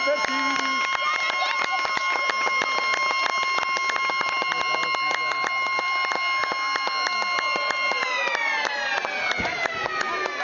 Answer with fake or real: real